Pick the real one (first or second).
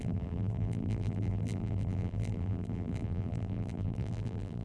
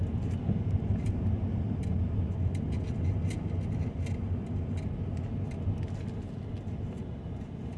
second